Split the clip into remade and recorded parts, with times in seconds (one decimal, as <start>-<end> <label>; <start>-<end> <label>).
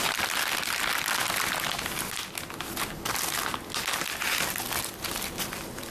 0.0-5.9 recorded